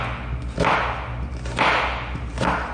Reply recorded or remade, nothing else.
recorded